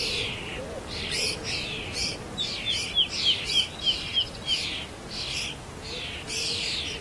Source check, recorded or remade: recorded